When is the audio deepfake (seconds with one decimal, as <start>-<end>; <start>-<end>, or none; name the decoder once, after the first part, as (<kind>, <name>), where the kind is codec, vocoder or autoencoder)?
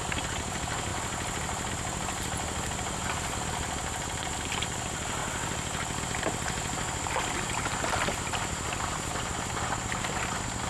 none